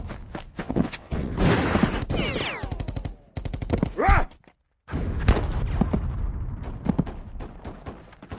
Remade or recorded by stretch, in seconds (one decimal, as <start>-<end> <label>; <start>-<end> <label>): 0.0-0.6 recorded; 0.6-1.3 remade; 1.3-8.4 recorded